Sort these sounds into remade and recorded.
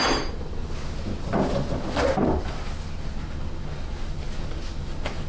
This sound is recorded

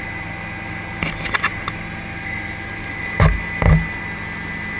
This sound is recorded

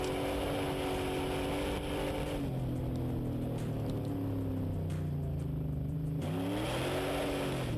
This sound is recorded